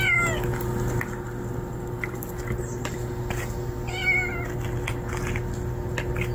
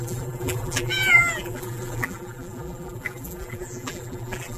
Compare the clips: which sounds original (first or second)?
first